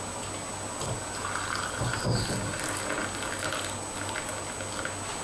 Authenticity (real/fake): real